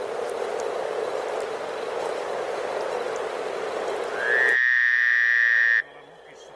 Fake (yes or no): no